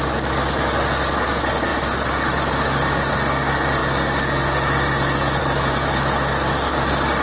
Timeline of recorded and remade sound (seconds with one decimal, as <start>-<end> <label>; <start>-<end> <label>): 0.0-7.2 recorded